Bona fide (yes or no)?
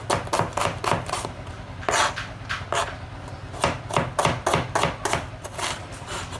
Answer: yes